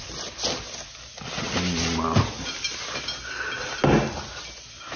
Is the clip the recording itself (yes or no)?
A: yes